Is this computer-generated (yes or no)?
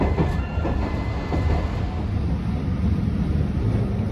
no